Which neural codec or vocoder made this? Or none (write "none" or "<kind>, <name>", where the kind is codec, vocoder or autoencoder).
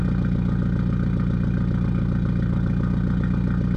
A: none